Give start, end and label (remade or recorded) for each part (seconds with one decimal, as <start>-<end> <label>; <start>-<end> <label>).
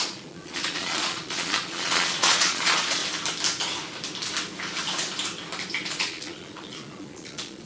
0.0-3.0 remade; 3.0-5.9 recorded; 5.9-7.7 remade